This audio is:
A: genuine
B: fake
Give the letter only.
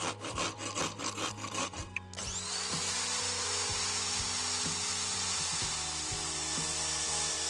A